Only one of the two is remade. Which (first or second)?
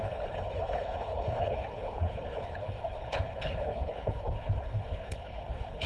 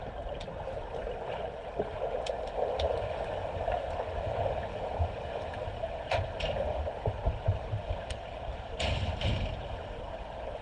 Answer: first